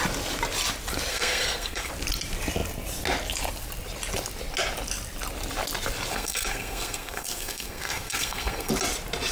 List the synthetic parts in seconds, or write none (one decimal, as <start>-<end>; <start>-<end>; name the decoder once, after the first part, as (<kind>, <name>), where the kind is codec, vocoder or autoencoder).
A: 1.1-1.9 (codec, SNAC); 6.1-8.7